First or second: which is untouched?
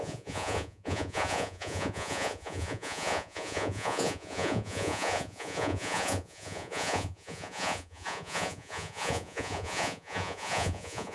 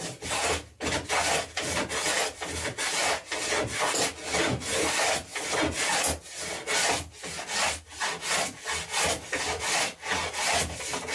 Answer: second